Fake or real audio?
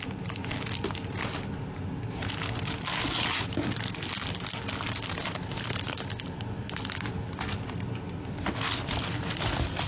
real